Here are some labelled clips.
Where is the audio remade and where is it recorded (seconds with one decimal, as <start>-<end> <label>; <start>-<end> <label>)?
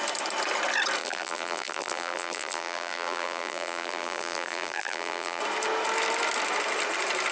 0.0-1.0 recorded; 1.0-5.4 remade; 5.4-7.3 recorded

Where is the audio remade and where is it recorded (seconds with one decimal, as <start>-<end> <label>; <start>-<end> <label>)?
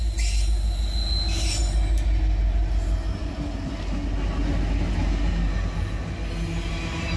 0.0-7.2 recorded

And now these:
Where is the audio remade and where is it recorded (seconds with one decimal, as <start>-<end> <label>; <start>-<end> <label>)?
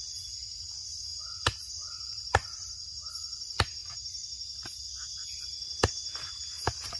0.0-7.0 recorded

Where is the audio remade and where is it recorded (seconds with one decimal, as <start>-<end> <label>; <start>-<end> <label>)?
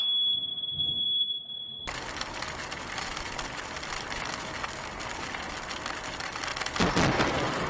0.0-0.5 recorded; 0.5-4.2 remade; 4.2-7.7 recorded